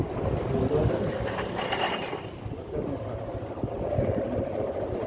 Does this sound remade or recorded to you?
recorded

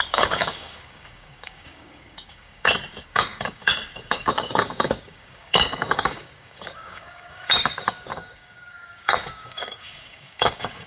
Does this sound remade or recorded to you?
remade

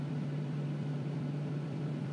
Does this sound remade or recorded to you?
remade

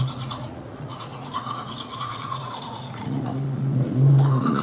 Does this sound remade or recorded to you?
remade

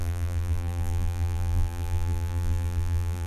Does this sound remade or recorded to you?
remade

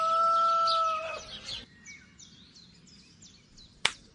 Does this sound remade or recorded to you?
recorded